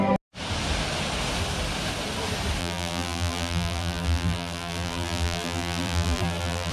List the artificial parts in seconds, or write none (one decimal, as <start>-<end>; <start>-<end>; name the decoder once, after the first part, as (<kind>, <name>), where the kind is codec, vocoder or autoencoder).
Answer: 2.6-6.7 (vocoder, BigVGAN v2)